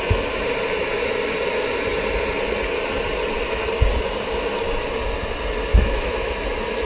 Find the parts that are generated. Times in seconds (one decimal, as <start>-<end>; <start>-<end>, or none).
5.7-6.3